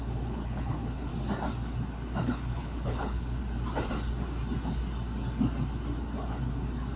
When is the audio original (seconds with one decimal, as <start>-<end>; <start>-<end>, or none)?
1.1-2.2; 3.4-7.0